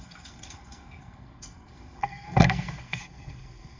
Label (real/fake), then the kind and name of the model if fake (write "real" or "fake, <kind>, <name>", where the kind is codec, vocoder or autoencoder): fake, codec, SNAC